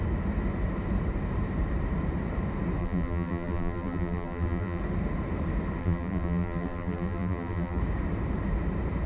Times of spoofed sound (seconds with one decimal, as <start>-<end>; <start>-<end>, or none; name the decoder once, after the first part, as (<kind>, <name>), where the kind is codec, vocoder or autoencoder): 2.8-4.8 (vocoder, BigVGAN v2); 5.8-7.8